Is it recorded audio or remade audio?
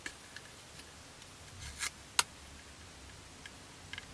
recorded